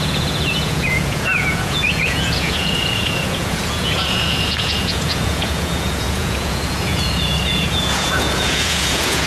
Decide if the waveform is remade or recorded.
remade